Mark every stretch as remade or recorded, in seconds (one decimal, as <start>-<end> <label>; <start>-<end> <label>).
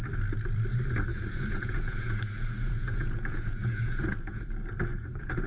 0.0-1.1 recorded; 1.1-4.4 remade; 4.4-4.9 recorded; 4.9-5.5 remade